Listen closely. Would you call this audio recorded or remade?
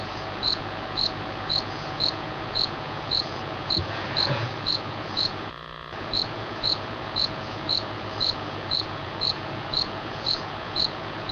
remade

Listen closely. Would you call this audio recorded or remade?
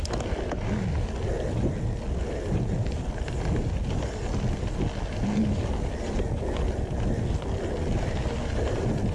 recorded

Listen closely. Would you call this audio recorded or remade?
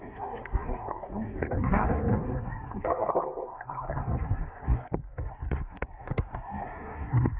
remade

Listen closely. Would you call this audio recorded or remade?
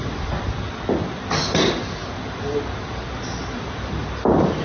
recorded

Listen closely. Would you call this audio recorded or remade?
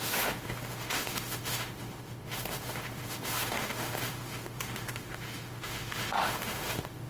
remade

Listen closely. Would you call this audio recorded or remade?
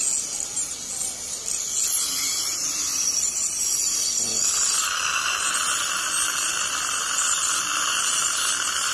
recorded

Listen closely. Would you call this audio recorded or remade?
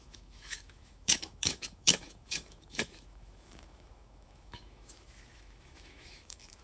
remade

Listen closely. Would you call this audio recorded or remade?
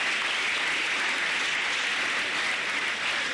recorded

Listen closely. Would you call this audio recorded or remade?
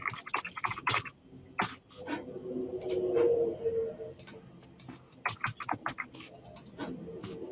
recorded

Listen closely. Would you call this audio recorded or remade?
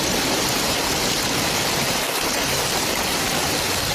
recorded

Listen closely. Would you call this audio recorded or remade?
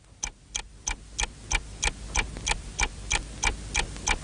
recorded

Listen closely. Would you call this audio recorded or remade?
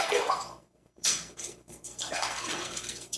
remade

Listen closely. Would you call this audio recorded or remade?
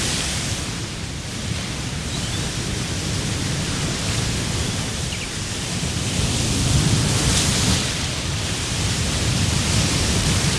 recorded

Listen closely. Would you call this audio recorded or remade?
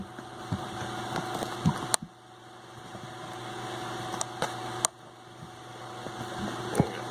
recorded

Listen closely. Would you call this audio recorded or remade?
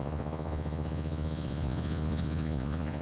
remade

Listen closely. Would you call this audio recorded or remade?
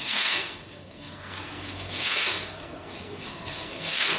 remade